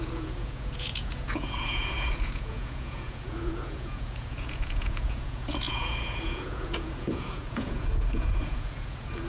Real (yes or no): no